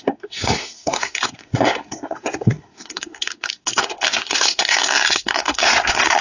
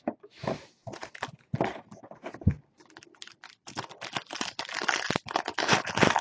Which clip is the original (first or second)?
second